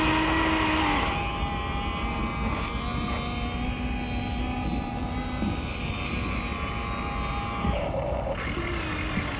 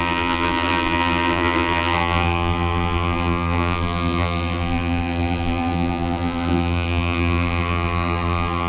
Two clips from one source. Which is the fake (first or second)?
second